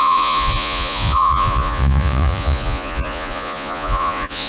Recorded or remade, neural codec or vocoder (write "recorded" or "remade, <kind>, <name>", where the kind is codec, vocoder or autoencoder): remade, vocoder, Vocos